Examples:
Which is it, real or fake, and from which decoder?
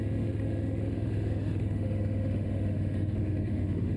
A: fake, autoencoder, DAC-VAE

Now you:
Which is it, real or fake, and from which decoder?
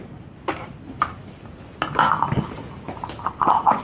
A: real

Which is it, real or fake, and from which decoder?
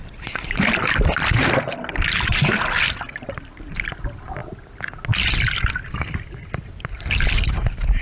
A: real